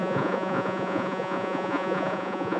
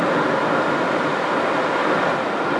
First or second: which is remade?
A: first